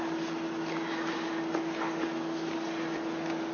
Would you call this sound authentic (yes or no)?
yes